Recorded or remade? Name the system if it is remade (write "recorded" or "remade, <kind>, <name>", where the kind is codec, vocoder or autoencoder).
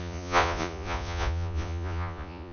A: remade, vocoder, Vocos